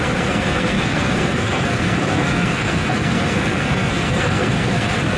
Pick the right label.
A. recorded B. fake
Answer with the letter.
B